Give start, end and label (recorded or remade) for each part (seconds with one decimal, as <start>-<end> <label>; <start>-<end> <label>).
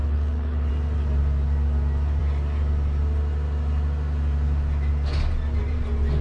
0.0-0.7 remade; 0.7-6.2 recorded